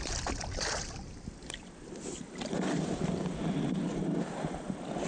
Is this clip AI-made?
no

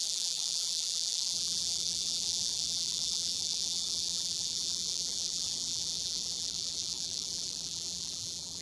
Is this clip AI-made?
yes